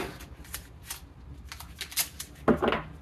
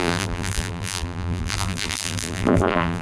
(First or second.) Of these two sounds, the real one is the first